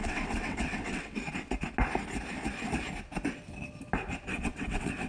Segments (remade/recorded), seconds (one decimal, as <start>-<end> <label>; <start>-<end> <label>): 0.0-1.2 remade; 1.2-4.3 recorded; 4.3-5.1 remade